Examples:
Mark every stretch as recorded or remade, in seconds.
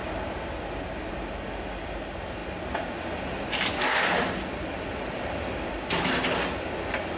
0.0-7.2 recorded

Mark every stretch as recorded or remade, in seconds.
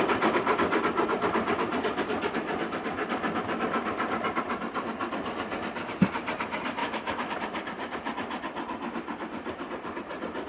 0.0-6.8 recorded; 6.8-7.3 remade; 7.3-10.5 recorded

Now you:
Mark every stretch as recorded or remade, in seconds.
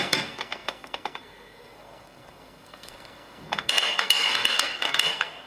0.0-5.5 remade